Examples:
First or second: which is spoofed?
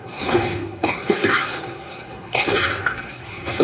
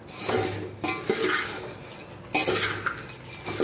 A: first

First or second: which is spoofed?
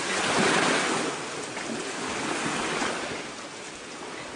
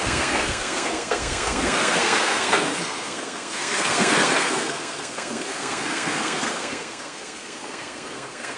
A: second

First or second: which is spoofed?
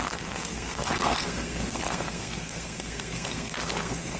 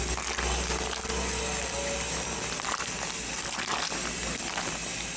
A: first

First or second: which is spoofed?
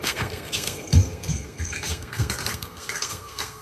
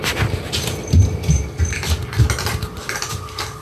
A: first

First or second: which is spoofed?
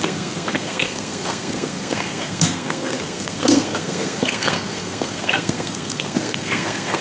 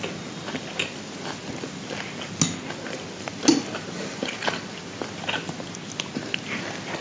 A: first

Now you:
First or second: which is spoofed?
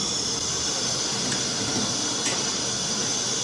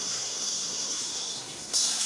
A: second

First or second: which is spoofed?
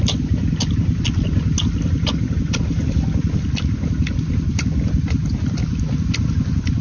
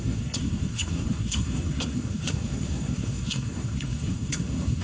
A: second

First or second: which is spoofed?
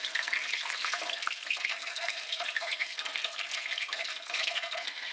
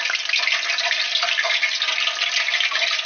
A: first